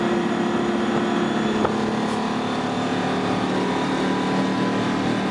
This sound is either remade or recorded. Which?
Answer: recorded